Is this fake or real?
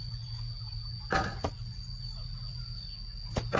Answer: real